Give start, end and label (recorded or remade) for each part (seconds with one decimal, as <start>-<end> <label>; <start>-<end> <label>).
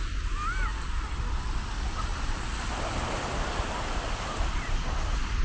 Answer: 0.0-0.7 recorded; 0.7-1.7 remade; 1.7-2.1 recorded; 2.1-5.4 remade